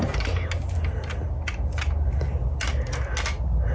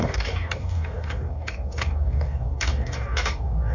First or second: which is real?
first